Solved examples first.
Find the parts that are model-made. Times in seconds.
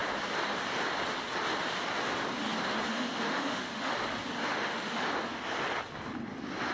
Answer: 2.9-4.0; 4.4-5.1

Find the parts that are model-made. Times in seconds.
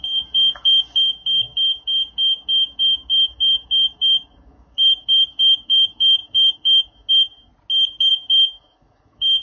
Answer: 0.0-7.5; 8.1-9.4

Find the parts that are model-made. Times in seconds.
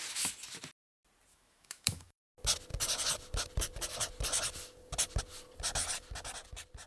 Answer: 1.3-2.3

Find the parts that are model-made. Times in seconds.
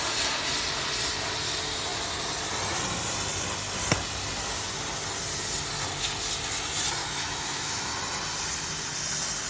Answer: 7.0-7.9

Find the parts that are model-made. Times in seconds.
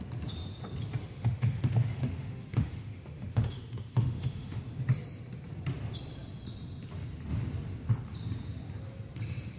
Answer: 1.0-4.6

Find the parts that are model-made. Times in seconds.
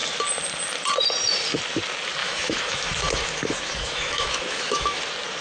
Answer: 2.2-5.0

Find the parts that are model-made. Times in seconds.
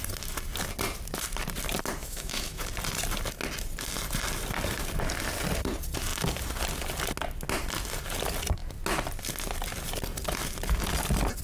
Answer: 2.0-2.6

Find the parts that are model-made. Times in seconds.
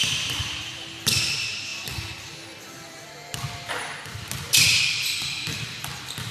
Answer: none